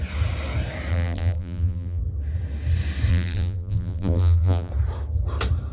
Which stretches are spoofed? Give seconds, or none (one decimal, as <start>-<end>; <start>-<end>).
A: 0.9-2.0; 3.1-4.7